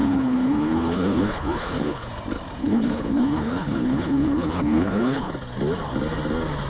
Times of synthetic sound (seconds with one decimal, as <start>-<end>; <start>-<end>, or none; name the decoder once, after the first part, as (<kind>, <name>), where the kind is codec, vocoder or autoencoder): 0.0-2.1 (codec, HILCodec); 2.6-5.3